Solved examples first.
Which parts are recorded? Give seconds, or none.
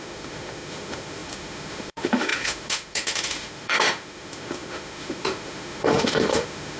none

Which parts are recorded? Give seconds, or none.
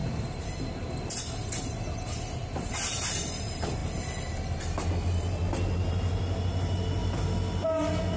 0.0-8.2